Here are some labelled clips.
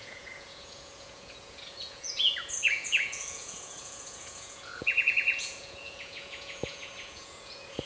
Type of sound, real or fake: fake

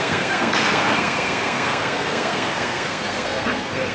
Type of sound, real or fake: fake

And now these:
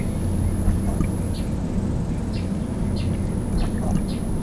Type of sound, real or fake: real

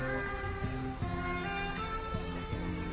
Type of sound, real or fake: real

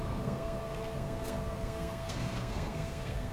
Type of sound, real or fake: fake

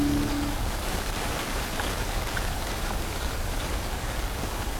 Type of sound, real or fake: fake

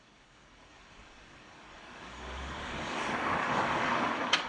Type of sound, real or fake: fake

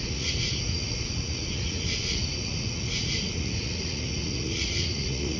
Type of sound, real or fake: fake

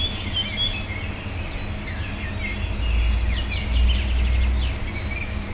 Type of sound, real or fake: real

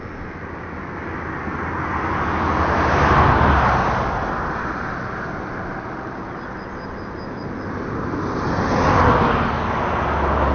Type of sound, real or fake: real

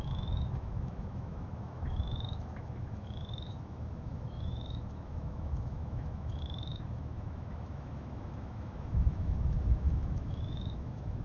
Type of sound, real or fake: fake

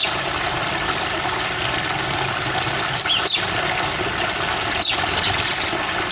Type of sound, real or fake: real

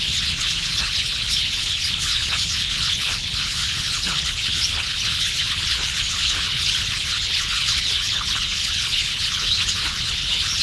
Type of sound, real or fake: fake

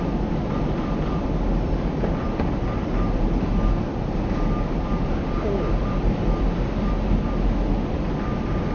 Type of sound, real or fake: real